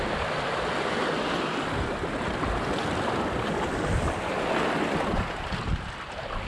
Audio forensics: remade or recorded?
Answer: remade